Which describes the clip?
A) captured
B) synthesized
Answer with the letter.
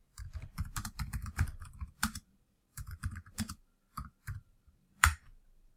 B